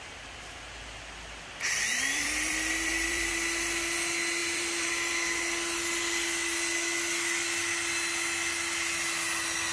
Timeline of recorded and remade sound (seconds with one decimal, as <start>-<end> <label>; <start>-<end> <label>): 0.0-1.9 recorded; 1.9-3.3 remade; 3.3-4.4 recorded; 4.4-5.4 remade; 5.4-9.7 recorded